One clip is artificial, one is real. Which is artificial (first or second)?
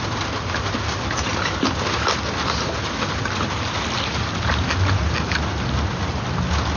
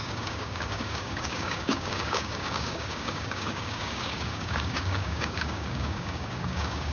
second